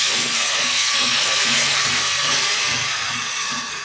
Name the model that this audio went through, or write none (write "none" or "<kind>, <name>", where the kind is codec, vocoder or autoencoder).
codec, SNAC